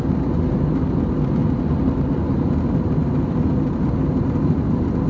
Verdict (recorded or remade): recorded